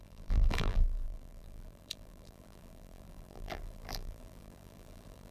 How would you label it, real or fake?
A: fake